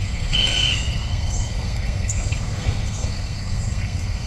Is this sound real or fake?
fake